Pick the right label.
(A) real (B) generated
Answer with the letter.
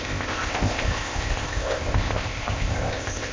B